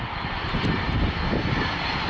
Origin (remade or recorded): recorded